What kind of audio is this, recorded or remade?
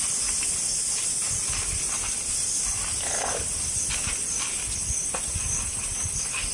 recorded